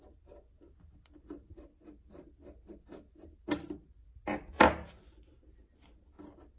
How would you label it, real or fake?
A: real